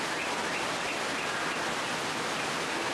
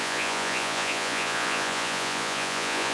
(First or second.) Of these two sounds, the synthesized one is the second